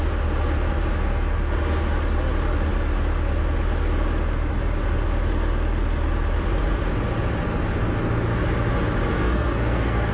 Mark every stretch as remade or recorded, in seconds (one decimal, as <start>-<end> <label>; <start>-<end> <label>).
0.0-9.1 recorded; 9.1-10.1 remade